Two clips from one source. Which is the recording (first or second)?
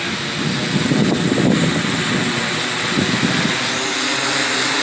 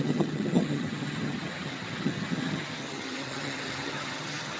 first